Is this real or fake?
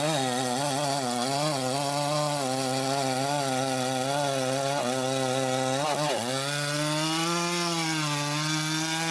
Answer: real